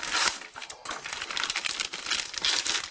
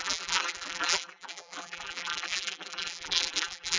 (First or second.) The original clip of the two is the first